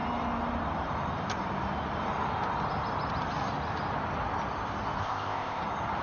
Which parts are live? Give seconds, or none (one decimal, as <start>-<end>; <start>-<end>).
0.0-5.0; 5.6-6.0